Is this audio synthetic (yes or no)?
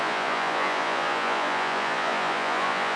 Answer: yes